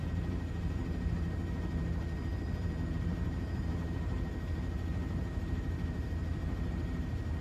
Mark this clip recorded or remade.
remade